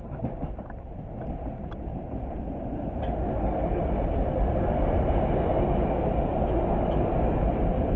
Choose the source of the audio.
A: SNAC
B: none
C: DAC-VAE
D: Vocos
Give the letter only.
B